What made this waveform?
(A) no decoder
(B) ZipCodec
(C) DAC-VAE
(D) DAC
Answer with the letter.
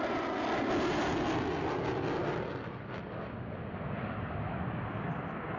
A